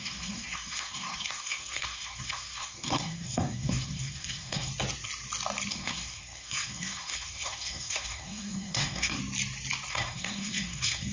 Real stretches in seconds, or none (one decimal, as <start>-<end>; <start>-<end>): 4.7-5.7; 9.2-9.9